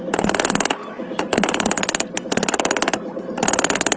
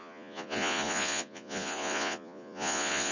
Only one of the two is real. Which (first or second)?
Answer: first